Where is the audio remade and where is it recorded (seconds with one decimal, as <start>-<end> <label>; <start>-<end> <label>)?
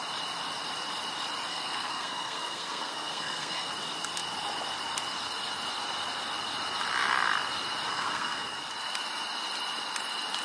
0.0-1.5 recorded; 1.5-3.7 remade; 3.7-7.9 recorded; 7.9-8.6 remade; 8.6-10.4 recorded